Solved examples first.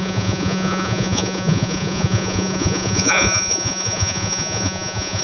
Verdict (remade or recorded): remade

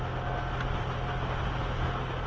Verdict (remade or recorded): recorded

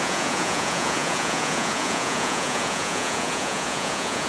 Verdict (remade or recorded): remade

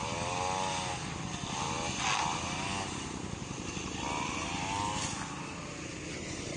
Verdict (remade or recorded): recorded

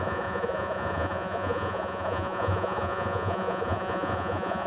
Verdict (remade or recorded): remade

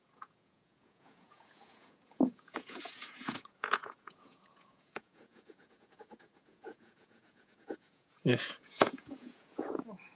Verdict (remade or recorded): remade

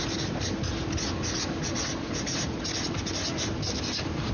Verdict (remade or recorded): recorded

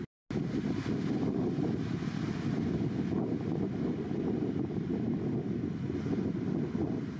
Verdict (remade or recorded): recorded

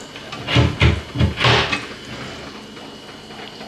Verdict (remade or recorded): recorded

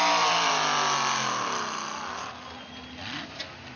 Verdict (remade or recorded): recorded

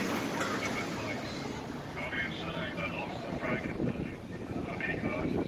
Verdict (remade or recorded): recorded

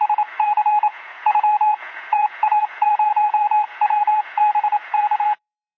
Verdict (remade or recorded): remade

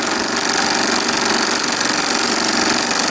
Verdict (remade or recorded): recorded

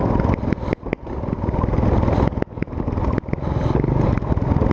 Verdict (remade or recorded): recorded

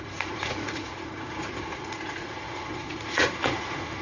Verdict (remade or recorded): remade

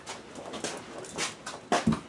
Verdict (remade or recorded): recorded